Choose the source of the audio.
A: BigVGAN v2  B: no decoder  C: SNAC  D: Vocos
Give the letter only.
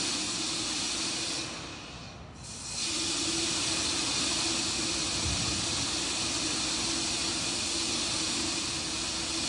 B